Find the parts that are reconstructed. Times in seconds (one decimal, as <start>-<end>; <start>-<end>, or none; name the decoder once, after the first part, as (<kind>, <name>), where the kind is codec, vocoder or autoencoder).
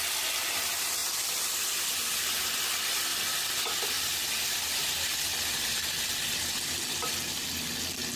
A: 0.0-3.1 (vocoder, BigVGAN v2)